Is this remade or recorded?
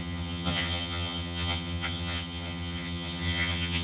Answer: remade